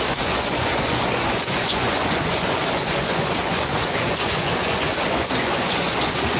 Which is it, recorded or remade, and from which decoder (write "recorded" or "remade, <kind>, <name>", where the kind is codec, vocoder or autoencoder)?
remade, vocoder, Vocos